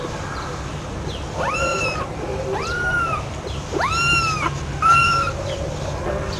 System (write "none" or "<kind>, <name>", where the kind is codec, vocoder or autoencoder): none